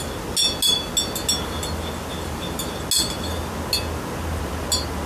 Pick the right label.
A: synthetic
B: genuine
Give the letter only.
B